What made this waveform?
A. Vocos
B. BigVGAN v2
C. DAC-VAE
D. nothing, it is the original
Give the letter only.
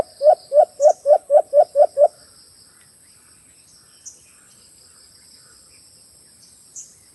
D